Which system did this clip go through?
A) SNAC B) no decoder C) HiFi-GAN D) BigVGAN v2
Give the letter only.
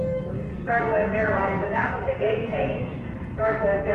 A